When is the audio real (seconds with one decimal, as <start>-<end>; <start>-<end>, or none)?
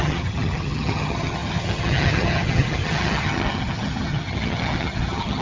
none